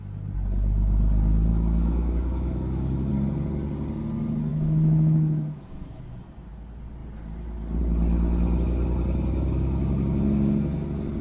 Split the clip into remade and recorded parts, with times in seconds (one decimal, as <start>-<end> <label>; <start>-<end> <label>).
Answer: 0.0-1.5 recorded; 1.5-3.1 remade; 3.1-4.5 recorded; 4.5-6.1 remade; 6.1-11.2 recorded